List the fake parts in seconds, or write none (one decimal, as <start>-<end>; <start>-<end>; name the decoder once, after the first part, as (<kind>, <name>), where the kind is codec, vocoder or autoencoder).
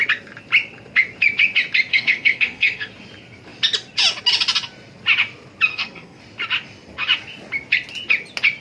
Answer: 1.9-2.9 (codec, SNAC); 5.7-6.2